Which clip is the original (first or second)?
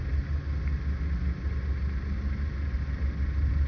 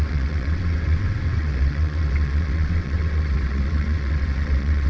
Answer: first